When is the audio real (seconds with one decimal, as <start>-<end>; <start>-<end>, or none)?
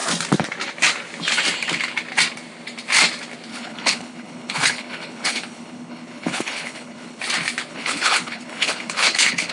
0.0-3.5; 7.2-7.7